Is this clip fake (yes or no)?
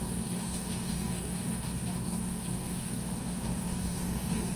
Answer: yes